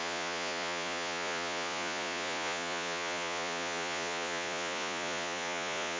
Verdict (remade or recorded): remade